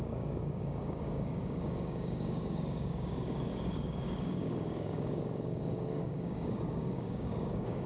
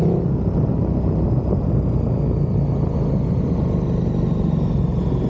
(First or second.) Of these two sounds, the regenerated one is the first